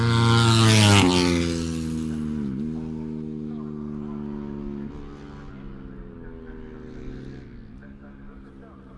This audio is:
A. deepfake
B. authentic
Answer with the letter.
B